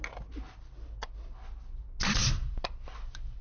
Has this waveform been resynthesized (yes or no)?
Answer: no